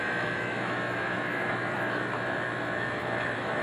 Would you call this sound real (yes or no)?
no